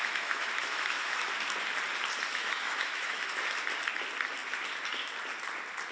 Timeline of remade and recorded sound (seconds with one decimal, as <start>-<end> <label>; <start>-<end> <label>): 0.0-1.3 remade; 1.3-2.3 recorded; 2.3-3.4 remade; 3.4-5.9 recorded

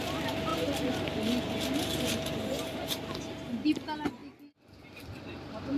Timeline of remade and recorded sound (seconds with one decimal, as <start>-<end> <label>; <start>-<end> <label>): 0.0-5.8 recorded